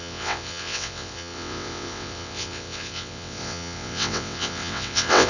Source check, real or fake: fake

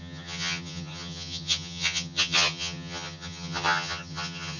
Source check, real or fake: fake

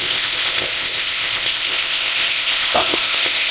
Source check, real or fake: fake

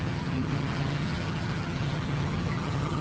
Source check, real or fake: fake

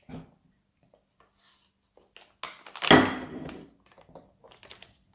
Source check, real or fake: real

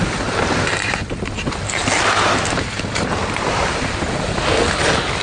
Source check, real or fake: real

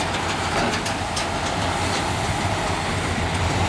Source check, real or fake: real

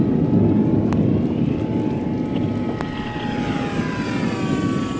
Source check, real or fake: real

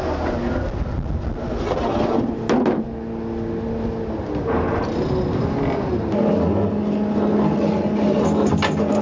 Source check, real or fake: real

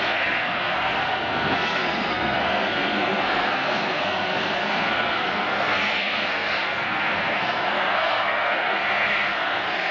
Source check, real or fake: fake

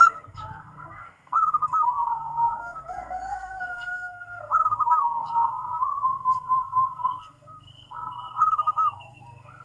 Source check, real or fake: fake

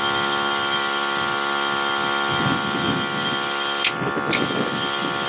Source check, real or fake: real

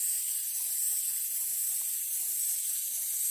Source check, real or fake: real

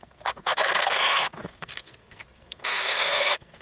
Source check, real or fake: fake